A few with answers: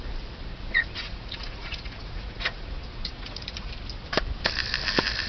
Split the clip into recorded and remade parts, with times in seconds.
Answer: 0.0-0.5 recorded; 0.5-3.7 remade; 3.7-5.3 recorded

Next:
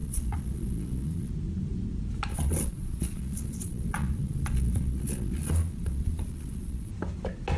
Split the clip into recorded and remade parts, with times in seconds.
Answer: 0.0-1.3 remade; 1.3-2.3 recorded; 2.3-6.9 remade; 6.9-7.6 recorded

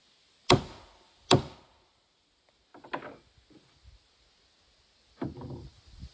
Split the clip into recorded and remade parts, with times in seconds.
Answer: 0.0-6.1 recorded

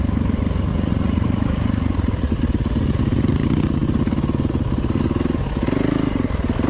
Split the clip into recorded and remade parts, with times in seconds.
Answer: 0.0-0.7 recorded; 0.7-2.3 remade; 2.3-6.7 recorded